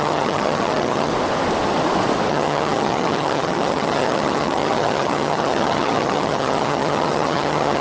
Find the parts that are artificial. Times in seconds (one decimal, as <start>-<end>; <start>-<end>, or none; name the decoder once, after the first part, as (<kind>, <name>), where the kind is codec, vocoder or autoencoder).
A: 0.0-1.1 (vocoder, HiFi-GAN); 2.3-7.8